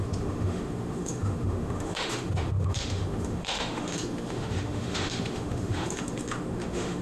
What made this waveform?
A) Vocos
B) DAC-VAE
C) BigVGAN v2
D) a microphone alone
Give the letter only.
B